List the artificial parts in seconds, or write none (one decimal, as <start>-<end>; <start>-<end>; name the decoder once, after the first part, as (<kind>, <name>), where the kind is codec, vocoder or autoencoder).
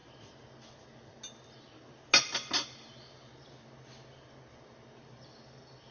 none